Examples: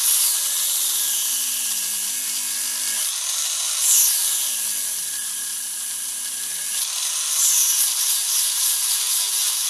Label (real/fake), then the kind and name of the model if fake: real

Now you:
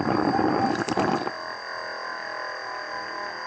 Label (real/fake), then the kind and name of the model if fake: real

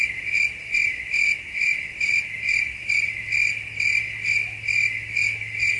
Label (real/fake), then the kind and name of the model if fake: real